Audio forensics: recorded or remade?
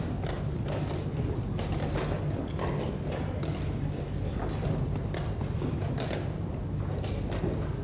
recorded